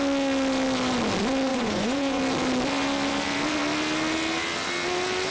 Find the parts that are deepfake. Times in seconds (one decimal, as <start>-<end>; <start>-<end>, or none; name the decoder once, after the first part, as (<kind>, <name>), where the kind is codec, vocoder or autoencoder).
1.5-2.2 (vocoder, Vocos)